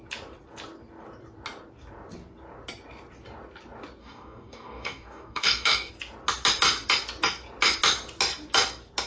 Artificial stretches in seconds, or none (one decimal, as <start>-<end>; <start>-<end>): 4.0-5.9